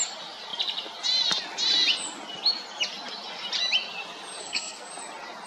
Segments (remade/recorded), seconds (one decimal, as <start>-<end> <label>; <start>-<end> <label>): 0.0-4.4 recorded; 4.4-4.9 remade; 4.9-5.5 recorded